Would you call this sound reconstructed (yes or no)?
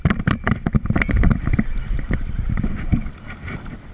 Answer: yes